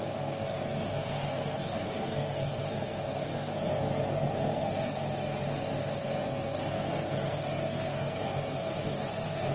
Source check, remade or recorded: remade